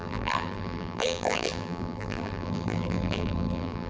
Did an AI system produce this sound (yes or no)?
yes